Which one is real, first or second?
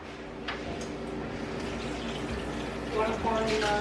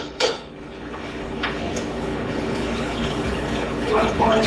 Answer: first